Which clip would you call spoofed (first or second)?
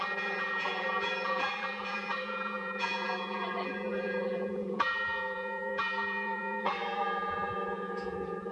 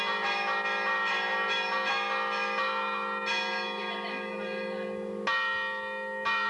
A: first